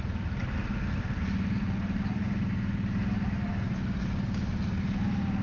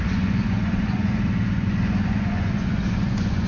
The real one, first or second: first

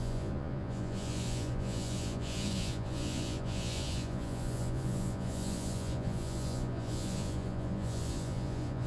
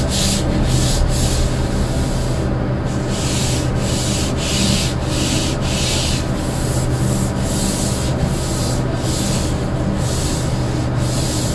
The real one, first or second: second